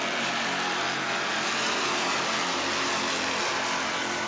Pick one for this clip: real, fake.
real